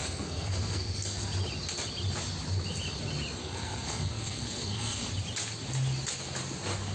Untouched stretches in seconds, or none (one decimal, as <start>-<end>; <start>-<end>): 1.2-3.4; 5.1-6.9